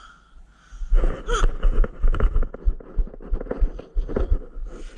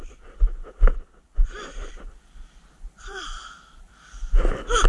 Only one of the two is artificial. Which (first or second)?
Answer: second